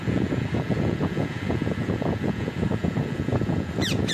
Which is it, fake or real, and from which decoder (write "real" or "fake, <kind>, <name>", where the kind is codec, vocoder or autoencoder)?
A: fake, vocoder, Vocos